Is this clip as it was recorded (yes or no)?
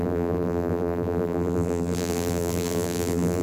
no